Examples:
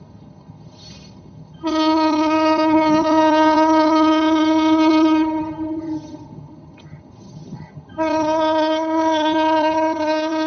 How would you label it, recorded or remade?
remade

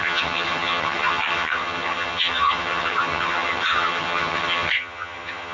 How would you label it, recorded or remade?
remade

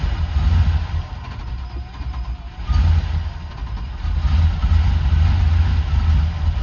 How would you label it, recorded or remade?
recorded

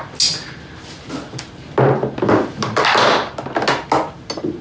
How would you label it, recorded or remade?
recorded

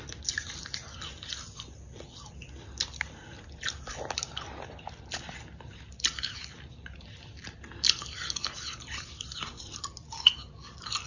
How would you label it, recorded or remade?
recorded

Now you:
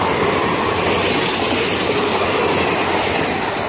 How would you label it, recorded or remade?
recorded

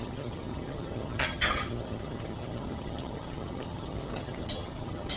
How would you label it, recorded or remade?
remade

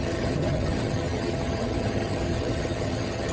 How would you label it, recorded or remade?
remade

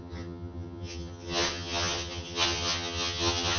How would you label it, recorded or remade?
remade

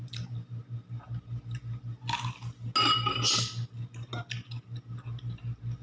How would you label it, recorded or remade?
recorded